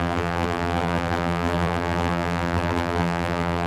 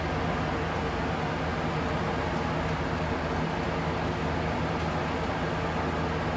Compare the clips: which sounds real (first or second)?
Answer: second